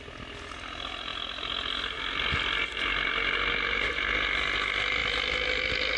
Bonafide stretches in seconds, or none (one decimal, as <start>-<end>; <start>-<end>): 0.0-6.0